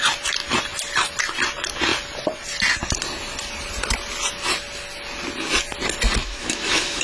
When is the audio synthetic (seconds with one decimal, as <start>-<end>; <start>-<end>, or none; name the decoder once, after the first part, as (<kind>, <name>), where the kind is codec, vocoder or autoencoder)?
6.2-7.0 (autoencoder, DAC-VAE)